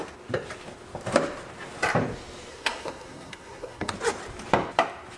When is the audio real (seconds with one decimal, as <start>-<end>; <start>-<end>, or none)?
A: 0.0-2.5; 3.9-5.2